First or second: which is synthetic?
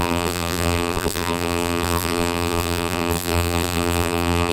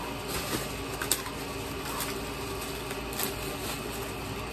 first